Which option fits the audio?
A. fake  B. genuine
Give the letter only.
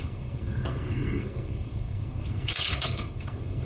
A